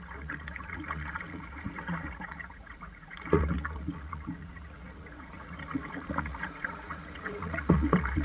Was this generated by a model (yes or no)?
yes